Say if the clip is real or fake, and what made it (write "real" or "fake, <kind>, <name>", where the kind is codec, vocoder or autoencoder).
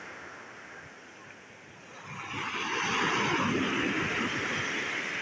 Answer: real